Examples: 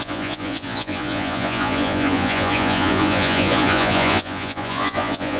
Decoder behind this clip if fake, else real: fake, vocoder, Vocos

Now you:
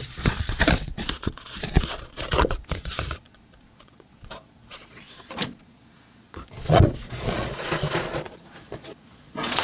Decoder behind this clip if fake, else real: fake, vocoder, Vocos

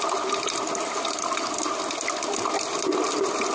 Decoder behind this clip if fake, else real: real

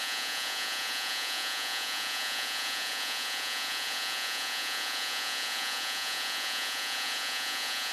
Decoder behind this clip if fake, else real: fake, vocoder, Vocos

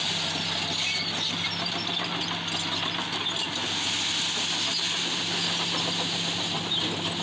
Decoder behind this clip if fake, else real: real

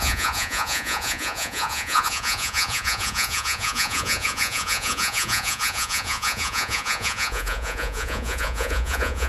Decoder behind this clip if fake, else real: fake, vocoder, Vocos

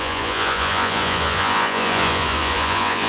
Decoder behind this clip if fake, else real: fake, vocoder, Vocos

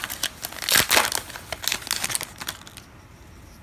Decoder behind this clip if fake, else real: real